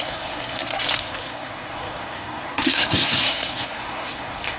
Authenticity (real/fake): fake